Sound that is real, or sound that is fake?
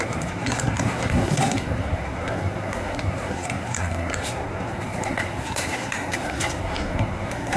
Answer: fake